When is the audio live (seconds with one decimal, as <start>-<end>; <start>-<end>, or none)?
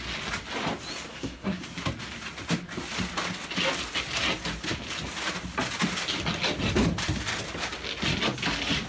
0.0-1.1; 1.6-8.9